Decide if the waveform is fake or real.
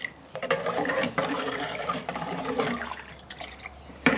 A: fake